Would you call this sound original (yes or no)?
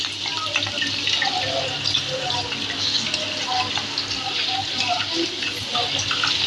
yes